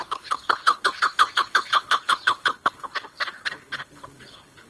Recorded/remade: remade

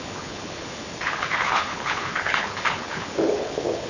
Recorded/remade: remade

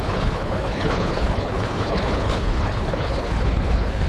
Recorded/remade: remade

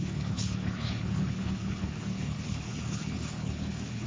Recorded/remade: remade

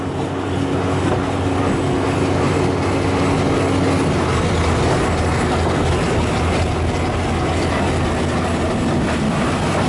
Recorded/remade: recorded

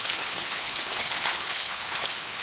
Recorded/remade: remade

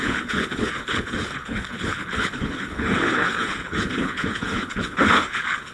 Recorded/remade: remade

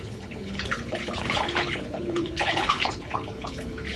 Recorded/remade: remade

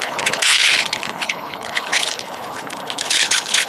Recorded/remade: remade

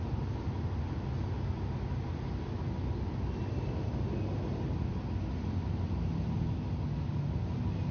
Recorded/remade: recorded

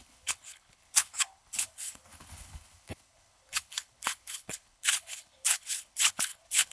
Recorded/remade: remade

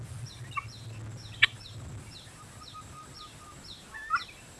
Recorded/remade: recorded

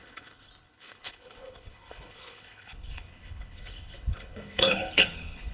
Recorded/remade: remade